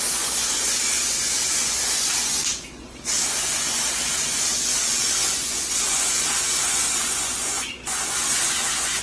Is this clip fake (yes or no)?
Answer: yes